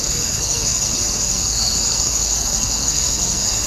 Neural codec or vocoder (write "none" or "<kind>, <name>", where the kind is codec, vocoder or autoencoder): codec, SNAC